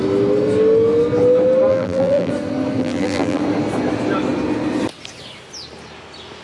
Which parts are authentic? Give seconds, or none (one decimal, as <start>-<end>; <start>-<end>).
0.0-1.7; 2.3-2.8; 3.4-6.4